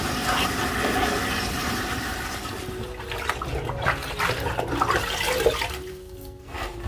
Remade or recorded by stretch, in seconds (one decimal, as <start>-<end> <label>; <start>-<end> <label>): 0.0-5.9 recorded; 5.9-6.9 remade